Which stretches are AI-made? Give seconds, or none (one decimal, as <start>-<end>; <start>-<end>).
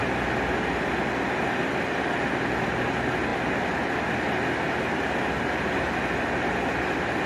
none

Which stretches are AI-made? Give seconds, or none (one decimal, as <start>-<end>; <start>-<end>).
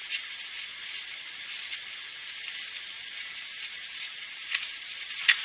3.2-5.4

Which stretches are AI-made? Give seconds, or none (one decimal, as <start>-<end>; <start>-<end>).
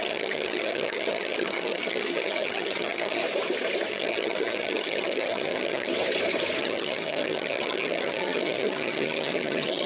0.0-3.2; 3.9-5.9; 6.6-9.9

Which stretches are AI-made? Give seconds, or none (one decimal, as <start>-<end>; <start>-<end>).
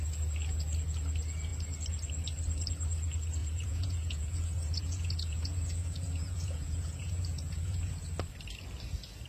3.4-7.9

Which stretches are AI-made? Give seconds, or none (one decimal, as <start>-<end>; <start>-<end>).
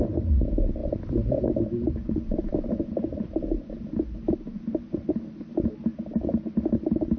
none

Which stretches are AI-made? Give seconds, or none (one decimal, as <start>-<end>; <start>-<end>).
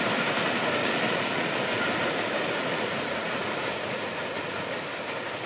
0.8-1.7; 2.6-4.7